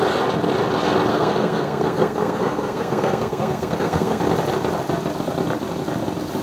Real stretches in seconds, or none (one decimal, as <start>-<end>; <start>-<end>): 0.0-1.1; 4.2-6.4